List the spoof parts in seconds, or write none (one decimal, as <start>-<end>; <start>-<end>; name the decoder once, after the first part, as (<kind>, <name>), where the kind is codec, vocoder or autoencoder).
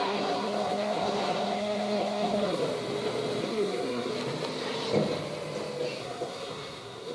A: 0.0-2.6 (codec, SNAC); 3.4-4.1; 6.0-7.1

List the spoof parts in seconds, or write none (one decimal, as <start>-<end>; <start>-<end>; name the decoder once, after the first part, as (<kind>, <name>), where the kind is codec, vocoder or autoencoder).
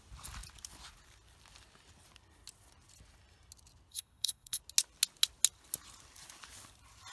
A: 3.9-4.6 (codec, SNAC)